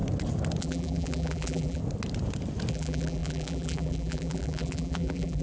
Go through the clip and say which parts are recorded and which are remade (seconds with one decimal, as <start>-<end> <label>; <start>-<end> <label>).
0.0-0.6 recorded; 0.6-1.8 remade; 1.8-2.7 recorded; 2.7-5.4 remade